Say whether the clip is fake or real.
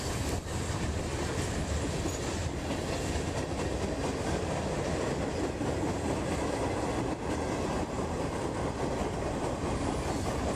real